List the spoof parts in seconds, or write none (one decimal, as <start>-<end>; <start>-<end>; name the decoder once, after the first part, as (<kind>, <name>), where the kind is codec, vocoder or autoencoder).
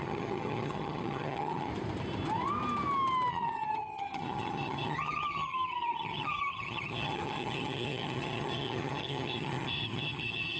0.0-1.7 (vocoder, HiFi-GAN); 3.3-10.6